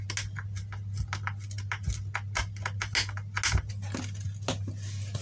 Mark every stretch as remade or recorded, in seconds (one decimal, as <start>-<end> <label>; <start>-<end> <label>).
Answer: 0.0-5.2 recorded

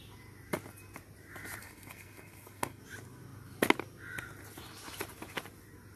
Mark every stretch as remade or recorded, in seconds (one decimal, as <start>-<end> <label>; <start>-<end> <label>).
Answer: 0.0-1.6 recorded; 1.6-2.8 remade; 2.8-6.0 recorded